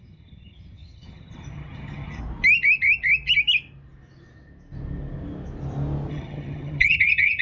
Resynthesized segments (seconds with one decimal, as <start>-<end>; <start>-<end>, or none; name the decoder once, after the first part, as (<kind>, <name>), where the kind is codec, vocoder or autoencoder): 0.0-2.2 (vocoder, HiFi-GAN); 6.1-7.4